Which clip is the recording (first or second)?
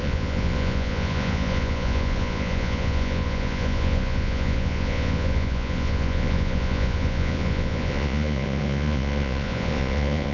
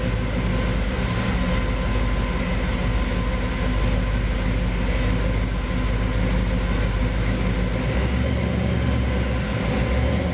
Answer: second